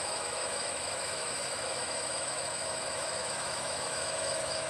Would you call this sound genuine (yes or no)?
no